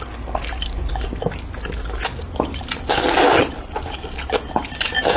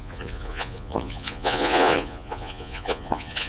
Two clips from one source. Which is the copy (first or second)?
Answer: second